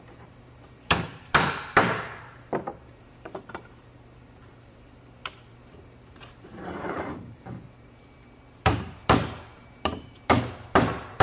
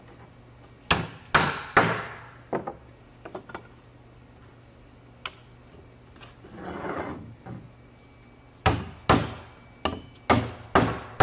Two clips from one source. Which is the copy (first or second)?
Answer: first